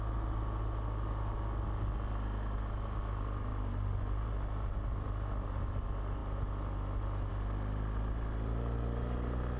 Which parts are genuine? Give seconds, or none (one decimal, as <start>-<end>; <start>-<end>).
0.0-9.6